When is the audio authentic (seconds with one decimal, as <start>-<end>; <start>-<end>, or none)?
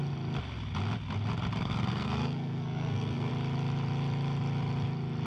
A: 0.0-1.6; 3.3-5.3